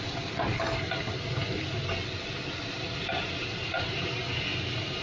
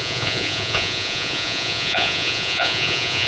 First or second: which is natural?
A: first